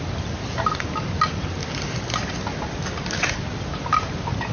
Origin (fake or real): real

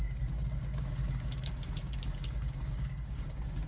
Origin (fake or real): fake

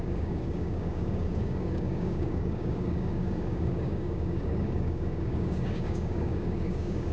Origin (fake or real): fake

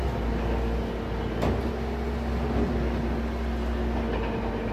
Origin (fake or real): real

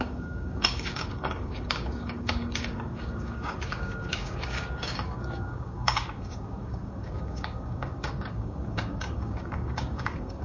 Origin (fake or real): fake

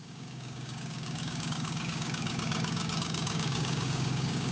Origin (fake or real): fake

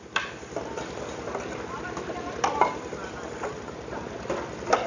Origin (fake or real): real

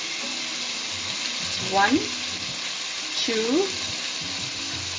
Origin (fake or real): real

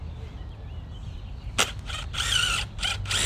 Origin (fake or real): real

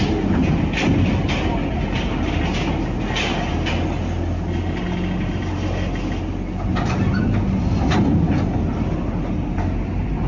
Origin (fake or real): real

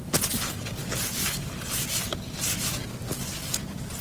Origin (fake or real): real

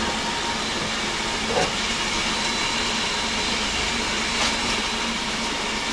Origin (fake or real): real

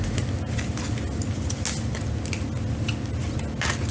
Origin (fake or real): real